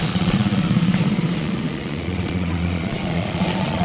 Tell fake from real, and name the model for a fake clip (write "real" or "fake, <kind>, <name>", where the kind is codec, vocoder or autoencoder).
fake, vocoder, Vocos